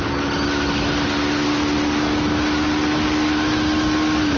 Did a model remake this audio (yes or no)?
no